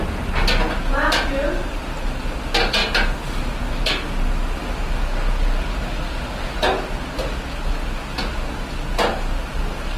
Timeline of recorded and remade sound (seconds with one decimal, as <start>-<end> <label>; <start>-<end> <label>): 0.0-10.0 recorded